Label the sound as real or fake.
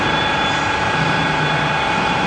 fake